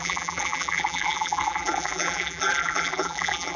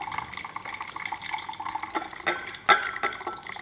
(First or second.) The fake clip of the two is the first